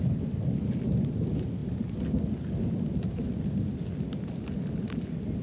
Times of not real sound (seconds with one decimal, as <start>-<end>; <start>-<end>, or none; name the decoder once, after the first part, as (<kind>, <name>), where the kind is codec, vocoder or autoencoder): none